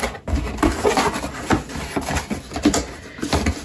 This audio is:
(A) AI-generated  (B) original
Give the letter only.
B